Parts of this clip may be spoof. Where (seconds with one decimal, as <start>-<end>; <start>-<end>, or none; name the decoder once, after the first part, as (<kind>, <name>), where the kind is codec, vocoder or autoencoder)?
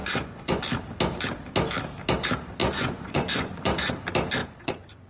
0.0-0.6 (vocoder, Vocos); 2.6-3.9; 4.4-5.1